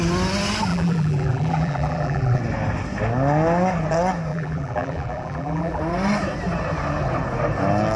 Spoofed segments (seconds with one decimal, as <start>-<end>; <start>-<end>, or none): 0.7-2.4; 4.3-5.8